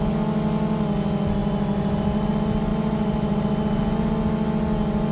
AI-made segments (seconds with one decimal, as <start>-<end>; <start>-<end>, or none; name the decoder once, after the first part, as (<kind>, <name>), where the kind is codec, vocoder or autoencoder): 1.4-2.3 (vocoder, BigVGAN v2); 2.7-3.8